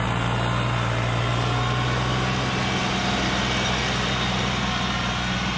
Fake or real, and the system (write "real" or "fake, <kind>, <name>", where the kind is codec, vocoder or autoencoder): real